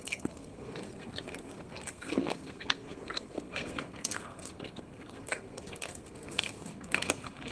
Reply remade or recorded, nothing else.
remade